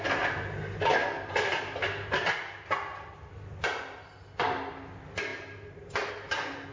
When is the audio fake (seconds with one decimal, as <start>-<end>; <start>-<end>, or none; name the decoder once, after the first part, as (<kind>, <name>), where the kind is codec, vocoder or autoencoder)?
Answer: none